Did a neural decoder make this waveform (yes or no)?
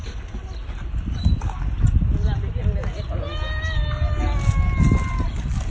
no